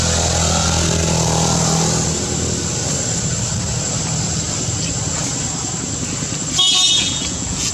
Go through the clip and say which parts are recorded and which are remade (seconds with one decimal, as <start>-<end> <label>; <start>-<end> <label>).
0.0-6.9 recorded; 6.9-7.7 remade